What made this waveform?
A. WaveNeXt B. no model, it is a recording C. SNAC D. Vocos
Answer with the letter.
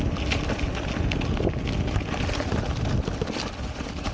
B